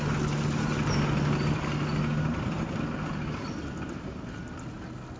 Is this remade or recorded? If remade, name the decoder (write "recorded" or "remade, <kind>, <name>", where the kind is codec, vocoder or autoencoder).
recorded